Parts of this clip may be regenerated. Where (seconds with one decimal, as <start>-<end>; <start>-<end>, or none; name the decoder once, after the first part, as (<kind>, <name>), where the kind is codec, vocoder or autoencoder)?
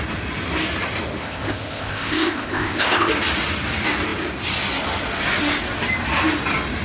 1.2-3.1 (codec, ZipCodec)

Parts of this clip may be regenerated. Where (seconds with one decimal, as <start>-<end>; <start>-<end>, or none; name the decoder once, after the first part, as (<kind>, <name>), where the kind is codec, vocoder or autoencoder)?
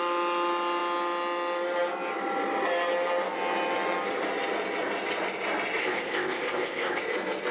5.8-7.0 (codec, ZipCodec)